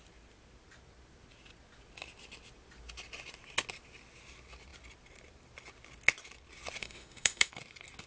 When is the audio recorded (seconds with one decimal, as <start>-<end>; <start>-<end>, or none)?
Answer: 0.0-6.8; 7.5-8.1